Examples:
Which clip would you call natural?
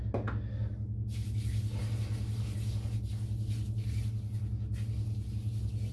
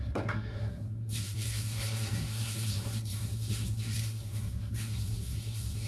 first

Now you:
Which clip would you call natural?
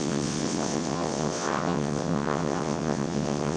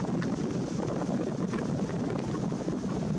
second